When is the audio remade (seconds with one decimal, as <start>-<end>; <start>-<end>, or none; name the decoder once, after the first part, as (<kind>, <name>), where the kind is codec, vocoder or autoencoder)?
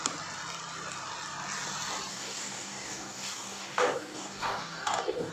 2.1-5.3 (codec, DAC)